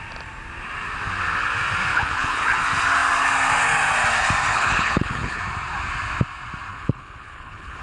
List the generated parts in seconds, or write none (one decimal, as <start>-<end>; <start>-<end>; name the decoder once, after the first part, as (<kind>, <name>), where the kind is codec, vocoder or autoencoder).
1.9-2.6 (codec, HILCodec); 4.5-5.4; 6.7-7.8